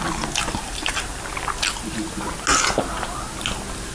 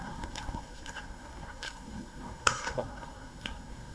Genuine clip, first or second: first